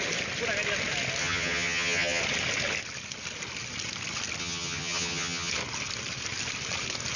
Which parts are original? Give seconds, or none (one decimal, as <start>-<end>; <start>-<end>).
0.0-1.2; 2.2-4.4; 5.5-7.2